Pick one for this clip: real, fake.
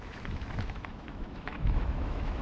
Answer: fake